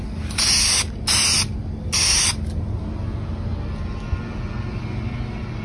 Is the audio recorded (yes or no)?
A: yes